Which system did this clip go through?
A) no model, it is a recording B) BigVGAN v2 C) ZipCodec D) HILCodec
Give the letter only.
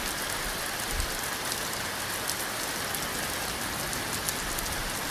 A